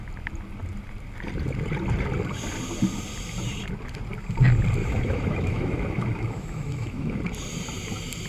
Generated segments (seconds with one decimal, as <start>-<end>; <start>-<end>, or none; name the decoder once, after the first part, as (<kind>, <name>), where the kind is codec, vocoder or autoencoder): 4.8-7.2 (autoencoder, DAC-VAE)